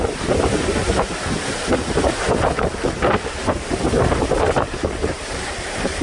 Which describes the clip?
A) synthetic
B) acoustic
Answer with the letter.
A